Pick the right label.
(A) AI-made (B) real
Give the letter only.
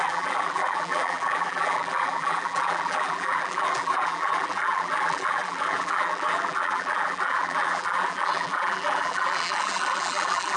A